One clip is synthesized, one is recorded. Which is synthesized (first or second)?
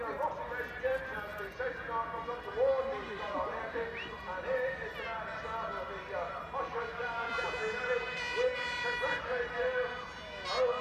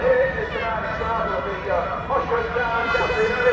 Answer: second